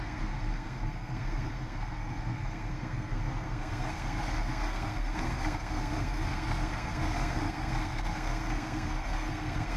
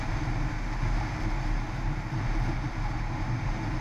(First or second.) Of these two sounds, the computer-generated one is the first